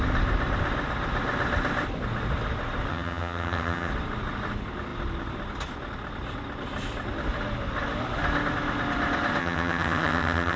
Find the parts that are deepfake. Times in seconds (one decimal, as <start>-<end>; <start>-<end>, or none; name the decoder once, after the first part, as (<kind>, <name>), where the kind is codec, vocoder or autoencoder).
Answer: 2.9-3.9 (vocoder, HiFi-GAN); 9.4-10.6